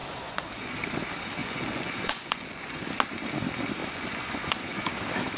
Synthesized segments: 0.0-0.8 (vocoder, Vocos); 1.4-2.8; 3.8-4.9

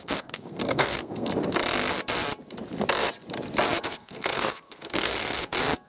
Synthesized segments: 0.0-1.3 (codec, SNAC); 3.8-5.9

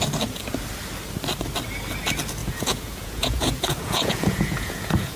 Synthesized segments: 2.4-5.2 (vocoder, Vocos)

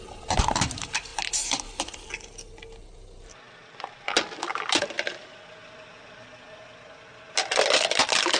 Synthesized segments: none

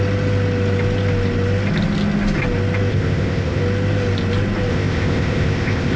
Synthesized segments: 2.9-3.6 (codec, ZipCodec); 4.7-6.0

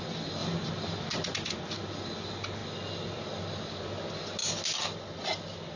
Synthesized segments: none

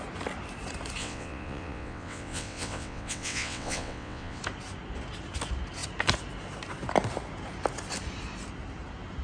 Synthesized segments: 1.0-4.4 (vocoder, WaveNeXt)